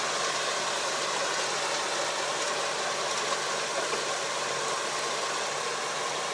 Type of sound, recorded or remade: recorded